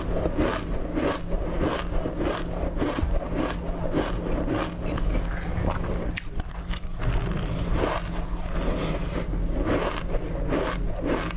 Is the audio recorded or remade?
recorded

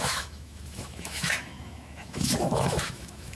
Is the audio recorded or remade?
remade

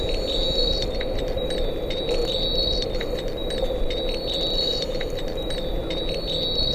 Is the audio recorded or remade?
recorded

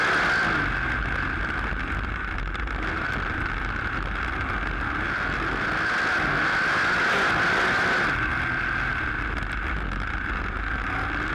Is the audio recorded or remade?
recorded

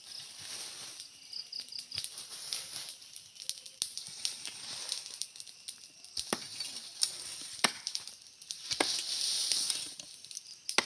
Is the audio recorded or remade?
recorded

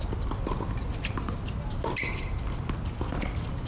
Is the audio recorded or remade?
recorded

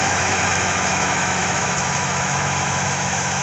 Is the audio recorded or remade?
remade